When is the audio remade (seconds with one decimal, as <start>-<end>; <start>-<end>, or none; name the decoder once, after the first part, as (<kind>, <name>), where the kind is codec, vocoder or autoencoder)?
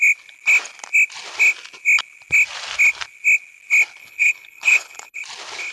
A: 4.0-5.2 (codec, HILCodec)